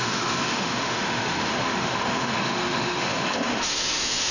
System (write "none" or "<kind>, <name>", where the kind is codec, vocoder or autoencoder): autoencoder, DAC-VAE